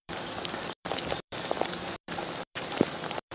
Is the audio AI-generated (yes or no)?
yes